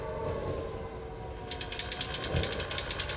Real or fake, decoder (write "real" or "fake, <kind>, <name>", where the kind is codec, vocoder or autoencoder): real